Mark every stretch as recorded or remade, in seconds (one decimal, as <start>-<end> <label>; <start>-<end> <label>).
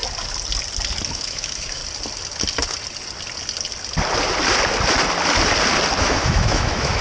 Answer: 0.0-1.1 recorded; 1.1-1.8 remade; 1.8-6.0 recorded; 6.0-7.0 remade